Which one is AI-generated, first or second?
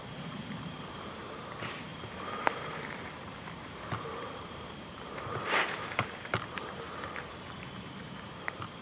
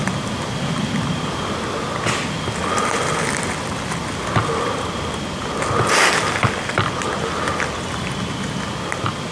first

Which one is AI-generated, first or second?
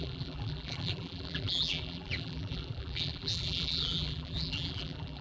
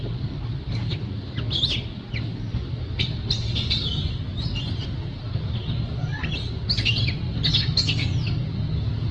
first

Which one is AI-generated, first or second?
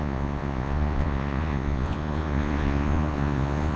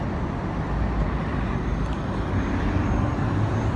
first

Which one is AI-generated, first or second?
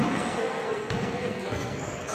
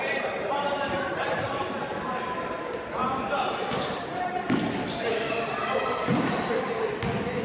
first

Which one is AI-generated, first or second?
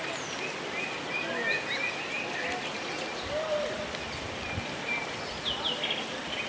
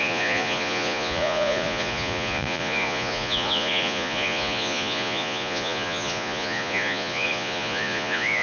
second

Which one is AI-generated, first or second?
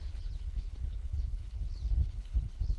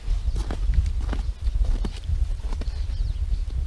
first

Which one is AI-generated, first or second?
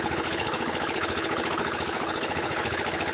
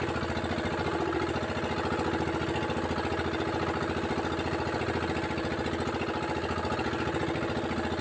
first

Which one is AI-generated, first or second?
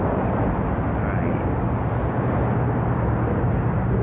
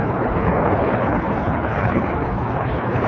second